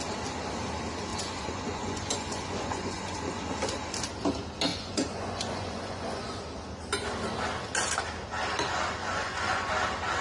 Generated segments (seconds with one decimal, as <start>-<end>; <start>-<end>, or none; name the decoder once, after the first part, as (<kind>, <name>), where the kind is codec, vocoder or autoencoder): 1.1-3.4 (vocoder, Vocos); 4.7-6.4; 9.0-9.7